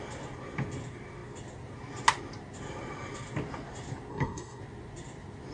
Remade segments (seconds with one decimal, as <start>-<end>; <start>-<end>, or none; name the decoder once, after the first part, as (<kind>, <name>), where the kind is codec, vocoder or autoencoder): 4.1-4.6 (codec, SNAC)